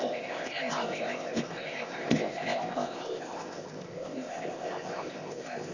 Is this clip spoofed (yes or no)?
yes